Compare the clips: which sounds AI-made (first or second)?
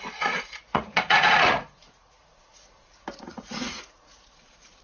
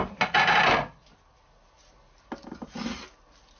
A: first